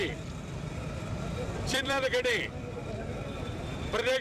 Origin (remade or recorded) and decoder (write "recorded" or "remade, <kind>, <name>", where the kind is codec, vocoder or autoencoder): remade, vocoder, BigVGAN v2